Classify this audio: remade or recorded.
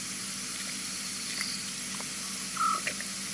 recorded